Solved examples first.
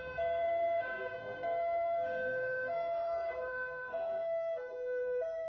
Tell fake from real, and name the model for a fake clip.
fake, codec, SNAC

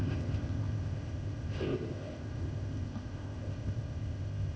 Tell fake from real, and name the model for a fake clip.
fake, codec, ZipCodec